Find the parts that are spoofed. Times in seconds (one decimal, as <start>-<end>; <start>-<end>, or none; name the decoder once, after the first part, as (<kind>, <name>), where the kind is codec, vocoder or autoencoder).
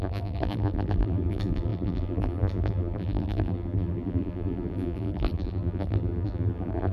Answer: 0.0-6.9 (vocoder, BigVGAN v2)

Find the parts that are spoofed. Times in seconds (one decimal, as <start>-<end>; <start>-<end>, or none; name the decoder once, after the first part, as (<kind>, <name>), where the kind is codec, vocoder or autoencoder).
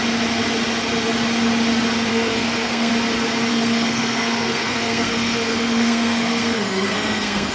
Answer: 2.1-2.9 (codec, SNAC); 3.5-7.5